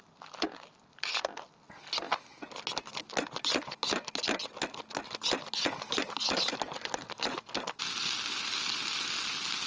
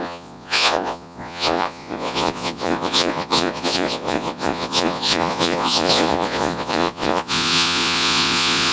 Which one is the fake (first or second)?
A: second